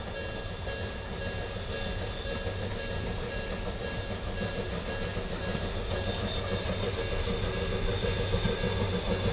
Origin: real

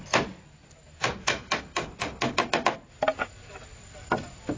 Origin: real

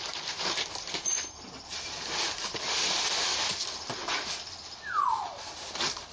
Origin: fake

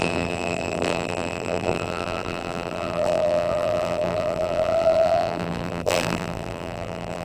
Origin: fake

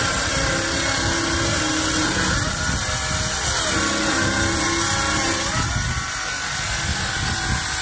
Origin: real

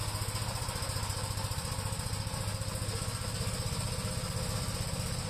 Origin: real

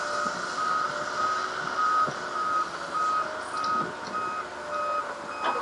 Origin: real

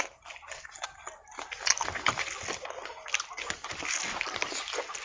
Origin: real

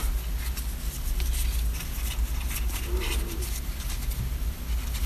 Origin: real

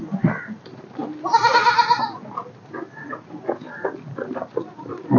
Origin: real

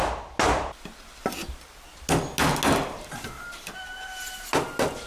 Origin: real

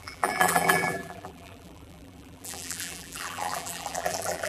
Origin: fake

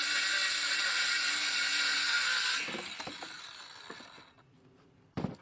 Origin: real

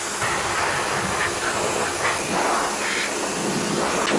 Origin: real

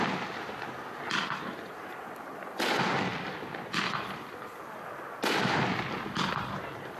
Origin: real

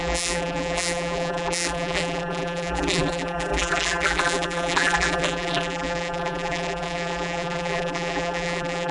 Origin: fake